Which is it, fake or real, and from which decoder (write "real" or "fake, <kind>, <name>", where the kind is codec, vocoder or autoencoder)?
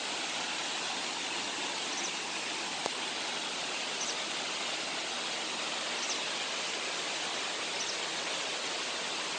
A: real